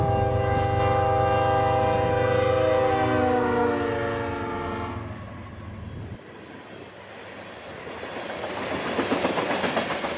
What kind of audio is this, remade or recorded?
recorded